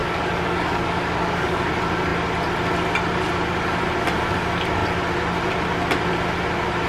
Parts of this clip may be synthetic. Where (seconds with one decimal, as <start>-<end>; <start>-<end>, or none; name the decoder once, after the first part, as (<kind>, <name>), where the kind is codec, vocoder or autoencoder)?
0.0-1.7 (codec, DAC)